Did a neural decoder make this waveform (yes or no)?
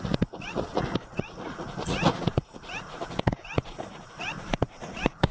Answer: yes